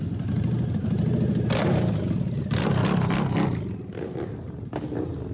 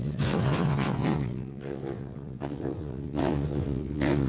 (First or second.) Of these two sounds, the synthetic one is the second